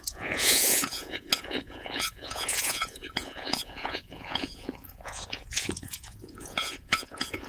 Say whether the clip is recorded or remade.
remade